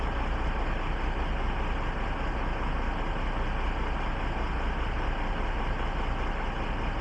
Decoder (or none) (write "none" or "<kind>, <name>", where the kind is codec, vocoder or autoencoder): none